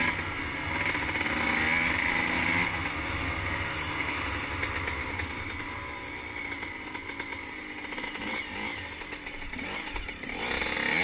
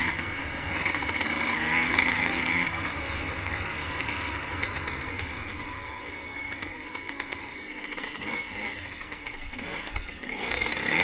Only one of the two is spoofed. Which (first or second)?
second